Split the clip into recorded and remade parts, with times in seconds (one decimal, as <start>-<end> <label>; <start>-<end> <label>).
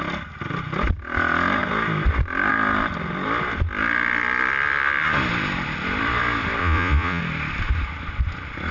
0.0-6.6 recorded; 6.6-7.2 remade; 7.2-8.7 recorded